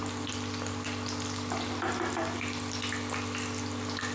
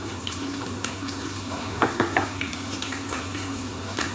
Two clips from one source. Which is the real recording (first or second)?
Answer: first